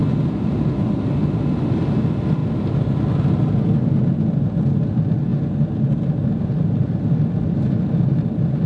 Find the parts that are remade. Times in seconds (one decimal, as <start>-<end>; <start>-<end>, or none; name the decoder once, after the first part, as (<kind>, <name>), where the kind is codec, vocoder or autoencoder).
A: 6.2-8.1 (vocoder, BigVGAN v2)